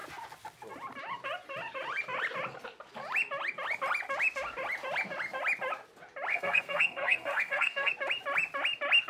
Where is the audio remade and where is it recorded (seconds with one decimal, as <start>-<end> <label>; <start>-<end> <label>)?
0.0-6.3 recorded; 6.3-7.9 remade; 7.9-9.1 recorded